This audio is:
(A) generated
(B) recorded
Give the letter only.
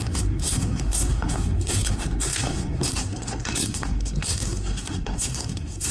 A